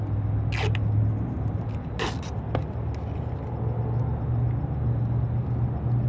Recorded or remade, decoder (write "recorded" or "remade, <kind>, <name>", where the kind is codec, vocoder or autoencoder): recorded